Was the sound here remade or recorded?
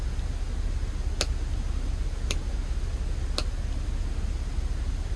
recorded